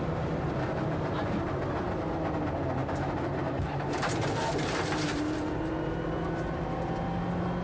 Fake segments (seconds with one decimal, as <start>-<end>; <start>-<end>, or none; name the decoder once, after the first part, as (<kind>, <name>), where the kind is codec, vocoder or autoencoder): 2.8-5.7 (vocoder, BigVGAN v2)